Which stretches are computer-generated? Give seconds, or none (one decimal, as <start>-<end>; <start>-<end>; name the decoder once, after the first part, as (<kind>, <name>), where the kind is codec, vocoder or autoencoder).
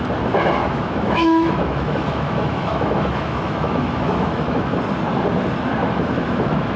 0.6-4.7 (autoencoder, DAC-VAE); 5.8-6.8